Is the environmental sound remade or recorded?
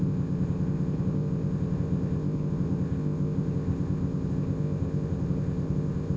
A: remade